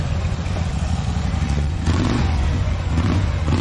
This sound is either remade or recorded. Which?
remade